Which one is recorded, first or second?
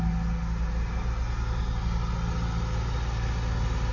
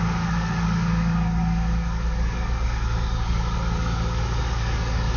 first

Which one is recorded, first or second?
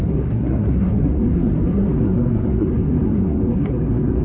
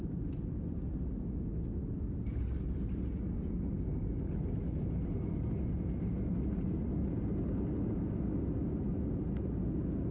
second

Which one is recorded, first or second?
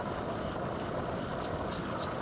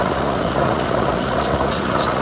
first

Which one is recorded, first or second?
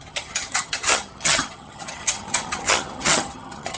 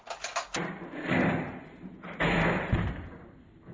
second